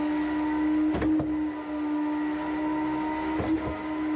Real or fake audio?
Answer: real